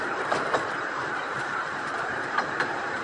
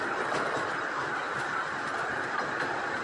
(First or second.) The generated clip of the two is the first